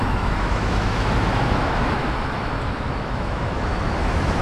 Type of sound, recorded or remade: remade